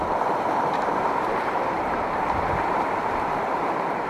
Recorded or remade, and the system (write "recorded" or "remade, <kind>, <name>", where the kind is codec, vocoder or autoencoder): remade, vocoder, BigVGAN v2